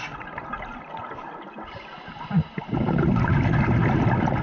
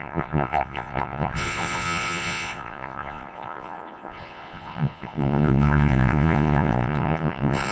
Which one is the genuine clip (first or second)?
first